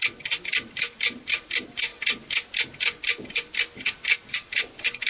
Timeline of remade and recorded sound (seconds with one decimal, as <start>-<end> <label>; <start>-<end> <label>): 0.0-5.1 recorded